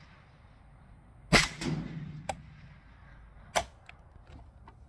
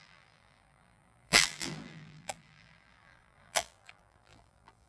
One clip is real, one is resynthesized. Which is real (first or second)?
first